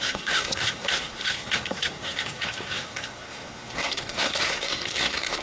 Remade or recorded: remade